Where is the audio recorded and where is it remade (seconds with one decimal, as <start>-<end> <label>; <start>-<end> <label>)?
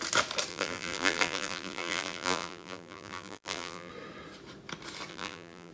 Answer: 0.0-0.5 recorded; 0.5-3.9 remade; 3.9-5.1 recorded; 5.1-5.7 remade